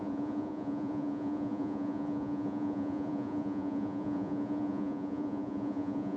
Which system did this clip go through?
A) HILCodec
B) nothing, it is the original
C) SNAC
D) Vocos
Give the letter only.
D